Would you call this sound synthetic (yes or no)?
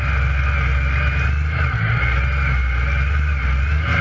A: no